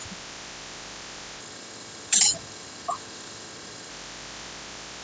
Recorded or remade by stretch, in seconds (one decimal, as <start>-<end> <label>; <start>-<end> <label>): 0.0-1.4 recorded; 1.4-3.9 remade; 3.9-5.0 recorded